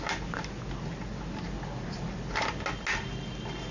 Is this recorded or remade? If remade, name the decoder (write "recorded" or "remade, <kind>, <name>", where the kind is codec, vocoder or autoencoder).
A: recorded